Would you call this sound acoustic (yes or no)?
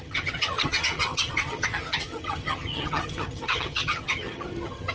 no